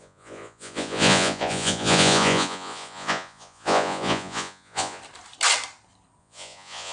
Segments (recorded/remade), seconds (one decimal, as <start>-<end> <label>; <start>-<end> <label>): 0.0-5.0 remade; 5.0-6.2 recorded; 6.2-6.9 remade